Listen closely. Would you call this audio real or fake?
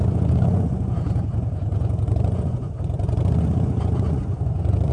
fake